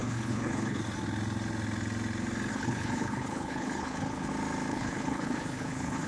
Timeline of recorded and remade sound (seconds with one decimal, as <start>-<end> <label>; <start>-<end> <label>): 0.0-0.8 remade; 0.8-2.5 recorded; 2.5-4.3 remade; 4.3-4.7 recorded; 4.7-6.1 remade